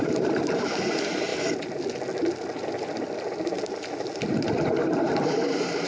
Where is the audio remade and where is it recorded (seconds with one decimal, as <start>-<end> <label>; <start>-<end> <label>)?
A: 0.0-1.3 remade; 1.3-4.3 recorded; 4.3-5.9 remade